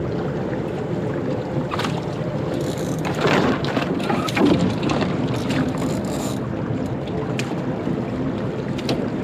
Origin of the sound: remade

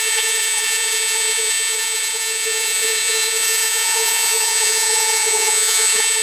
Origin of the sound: remade